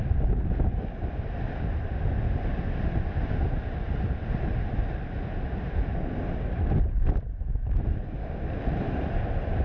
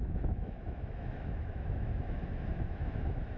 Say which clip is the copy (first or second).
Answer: second